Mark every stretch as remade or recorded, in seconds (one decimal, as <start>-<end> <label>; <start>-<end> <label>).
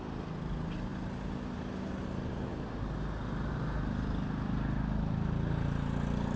0.0-6.4 recorded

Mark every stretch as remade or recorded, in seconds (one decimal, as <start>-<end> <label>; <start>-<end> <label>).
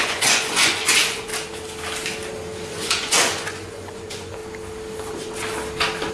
0.0-1.3 remade; 1.3-2.7 recorded; 2.7-4.4 remade; 4.4-6.1 recorded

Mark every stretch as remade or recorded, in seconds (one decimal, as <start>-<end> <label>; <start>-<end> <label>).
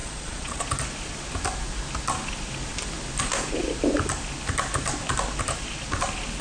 0.0-0.6 remade; 0.6-6.4 recorded